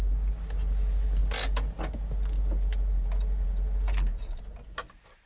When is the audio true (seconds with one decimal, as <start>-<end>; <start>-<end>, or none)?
0.0-5.3